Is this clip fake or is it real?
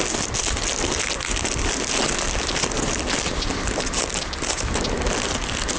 real